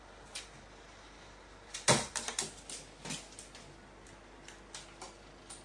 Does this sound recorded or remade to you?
recorded